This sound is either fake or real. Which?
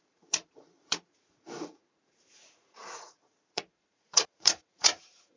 fake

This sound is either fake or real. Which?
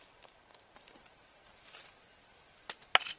real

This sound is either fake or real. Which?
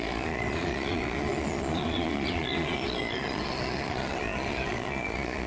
fake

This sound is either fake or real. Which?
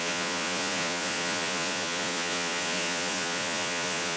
fake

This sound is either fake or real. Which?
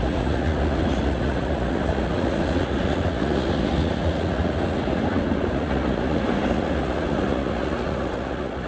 fake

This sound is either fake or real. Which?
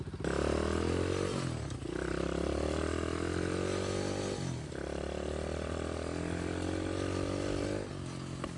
real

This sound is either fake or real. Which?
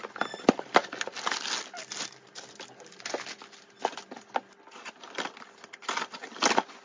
real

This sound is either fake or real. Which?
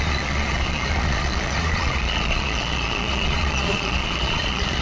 fake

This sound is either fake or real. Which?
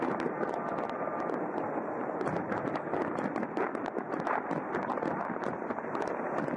real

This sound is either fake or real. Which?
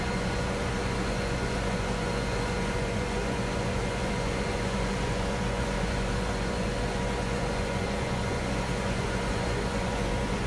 fake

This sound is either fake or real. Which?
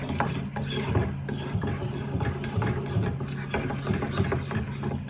real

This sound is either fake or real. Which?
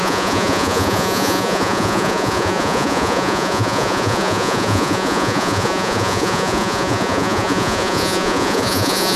fake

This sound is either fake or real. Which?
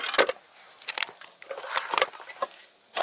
real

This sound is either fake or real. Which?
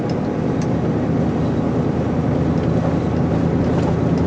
real